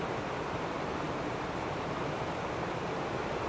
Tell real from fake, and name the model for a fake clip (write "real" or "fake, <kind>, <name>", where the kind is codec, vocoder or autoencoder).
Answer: fake, vocoder, BigVGAN v2